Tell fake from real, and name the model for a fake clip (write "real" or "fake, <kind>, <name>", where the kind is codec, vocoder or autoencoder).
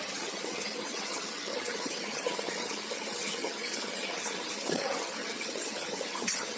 fake, vocoder, HiFi-GAN